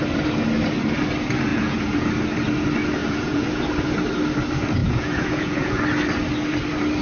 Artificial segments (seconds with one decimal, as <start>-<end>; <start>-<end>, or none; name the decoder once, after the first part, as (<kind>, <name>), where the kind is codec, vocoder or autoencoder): 1.5-2.1 (vocoder, Vocos); 3.0-3.6; 4.8-5.8